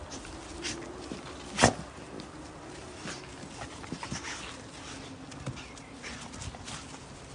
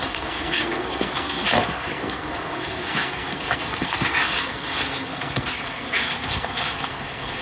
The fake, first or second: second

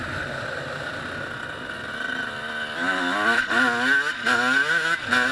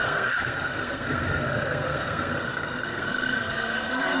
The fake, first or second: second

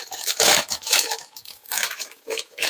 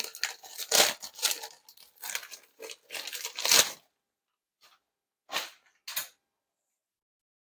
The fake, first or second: first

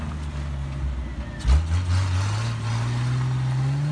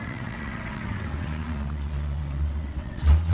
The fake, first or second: second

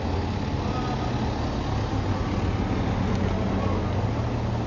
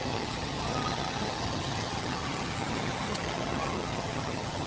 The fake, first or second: second